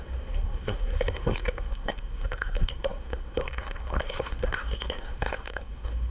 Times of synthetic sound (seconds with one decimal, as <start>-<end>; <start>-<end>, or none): 0.0-6.1